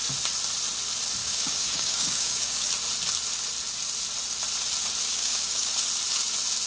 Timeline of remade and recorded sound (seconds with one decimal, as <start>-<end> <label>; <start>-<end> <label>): 0.0-1.2 recorded; 1.2-2.7 remade; 2.7-5.0 recorded; 5.0-5.7 remade; 5.7-6.7 recorded

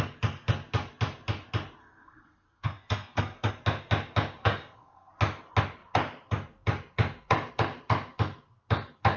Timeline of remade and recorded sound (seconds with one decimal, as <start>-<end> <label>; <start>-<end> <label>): 0.0-1.8 recorded; 1.8-3.5 remade; 3.5-4.4 recorded; 4.4-5.1 remade; 5.1-9.2 recorded